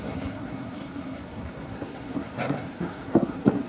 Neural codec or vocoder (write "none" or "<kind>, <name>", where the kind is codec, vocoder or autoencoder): codec, SNAC